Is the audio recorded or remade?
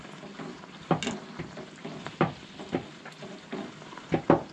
recorded